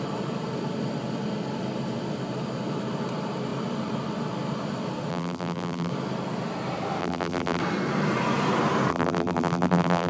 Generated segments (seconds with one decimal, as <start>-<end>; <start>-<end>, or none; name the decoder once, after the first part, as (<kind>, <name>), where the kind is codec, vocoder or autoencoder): 5.1-5.9 (vocoder, BigVGAN v2); 7.0-7.6; 8.9-10.1